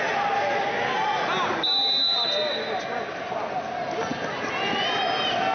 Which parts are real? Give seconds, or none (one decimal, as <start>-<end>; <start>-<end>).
0.0-5.5